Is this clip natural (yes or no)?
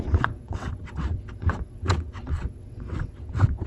no